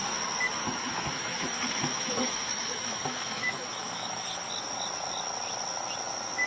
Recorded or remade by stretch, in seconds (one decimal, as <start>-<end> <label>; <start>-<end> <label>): 0.0-0.6 recorded; 0.6-4.5 remade; 4.5-6.5 recorded